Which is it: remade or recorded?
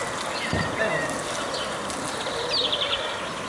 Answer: recorded